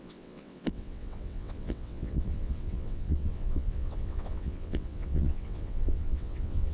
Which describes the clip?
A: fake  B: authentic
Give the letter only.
A